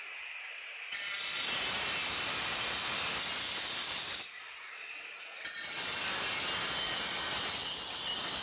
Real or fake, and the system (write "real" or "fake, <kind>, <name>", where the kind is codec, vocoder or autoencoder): real